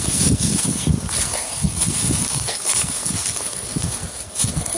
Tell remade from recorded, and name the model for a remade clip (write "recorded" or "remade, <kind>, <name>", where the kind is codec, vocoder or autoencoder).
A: remade, codec, SNAC